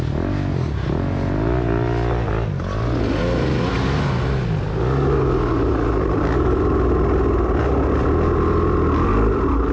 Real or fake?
real